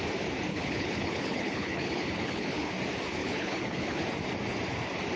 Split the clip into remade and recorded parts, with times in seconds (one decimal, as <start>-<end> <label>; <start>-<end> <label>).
0.0-0.5 recorded; 0.5-2.7 remade; 2.7-3.2 recorded; 3.2-4.0 remade; 4.0-5.2 recorded

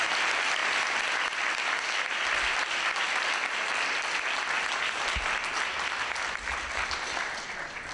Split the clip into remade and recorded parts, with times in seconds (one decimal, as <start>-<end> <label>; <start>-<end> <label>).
0.0-7.9 recorded